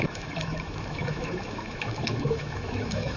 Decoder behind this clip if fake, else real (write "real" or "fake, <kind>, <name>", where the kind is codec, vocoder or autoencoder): fake, autoencoder, DAC-VAE